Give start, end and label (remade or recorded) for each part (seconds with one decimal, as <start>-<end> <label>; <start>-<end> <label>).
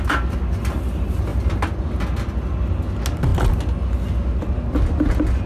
0.0-1.3 recorded; 1.3-1.8 remade; 1.8-5.5 recorded